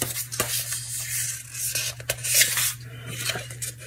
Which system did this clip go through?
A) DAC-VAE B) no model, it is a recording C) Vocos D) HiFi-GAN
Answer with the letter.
B